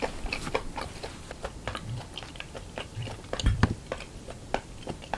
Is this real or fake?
fake